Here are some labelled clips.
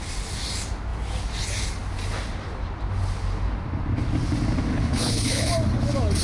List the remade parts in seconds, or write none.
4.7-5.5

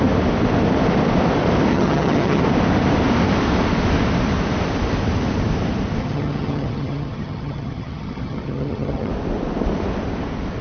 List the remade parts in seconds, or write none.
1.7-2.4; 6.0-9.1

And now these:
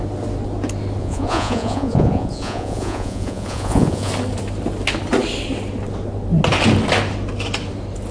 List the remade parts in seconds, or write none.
1.0-4.1

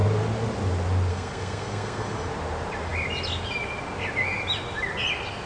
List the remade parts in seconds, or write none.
1.1-2.3